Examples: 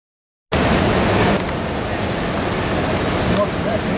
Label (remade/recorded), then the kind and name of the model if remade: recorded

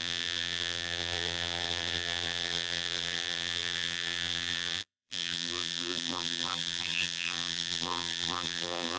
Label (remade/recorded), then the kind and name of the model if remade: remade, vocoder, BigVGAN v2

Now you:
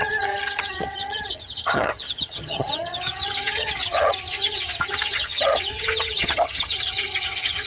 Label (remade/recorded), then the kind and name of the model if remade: remade, vocoder, HiFi-GAN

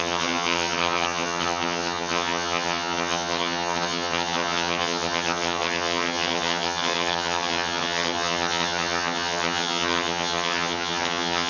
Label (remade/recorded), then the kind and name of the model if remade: remade, vocoder, HiFi-GAN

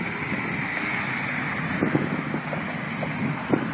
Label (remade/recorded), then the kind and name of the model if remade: recorded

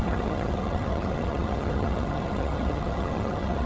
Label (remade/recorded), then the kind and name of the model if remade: remade, vocoder, HiFi-GAN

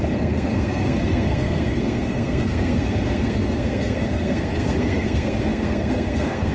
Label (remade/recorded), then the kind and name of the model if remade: remade, codec, SNAC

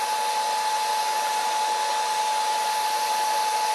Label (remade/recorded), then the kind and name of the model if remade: recorded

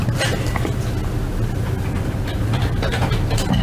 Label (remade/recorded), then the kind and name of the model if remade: recorded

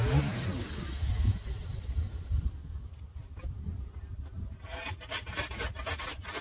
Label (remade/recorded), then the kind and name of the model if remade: recorded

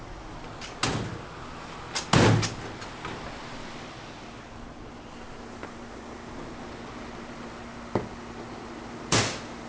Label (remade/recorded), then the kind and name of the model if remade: recorded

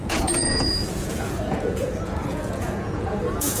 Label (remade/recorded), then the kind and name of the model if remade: remade, vocoder, Vocos